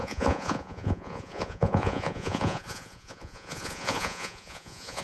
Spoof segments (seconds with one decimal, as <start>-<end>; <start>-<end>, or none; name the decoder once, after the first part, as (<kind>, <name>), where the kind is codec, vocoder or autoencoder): 0.0-5.0 (vocoder, Vocos)